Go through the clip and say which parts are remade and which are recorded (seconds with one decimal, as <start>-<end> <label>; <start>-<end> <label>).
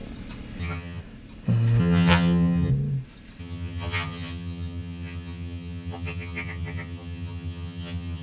0.0-0.6 recorded; 0.6-1.0 remade; 1.0-1.8 recorded; 1.8-2.7 remade; 2.7-3.4 recorded; 3.4-8.2 remade